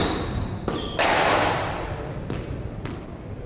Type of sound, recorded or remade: remade